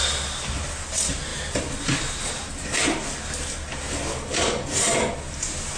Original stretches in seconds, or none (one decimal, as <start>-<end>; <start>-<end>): 0.0-5.8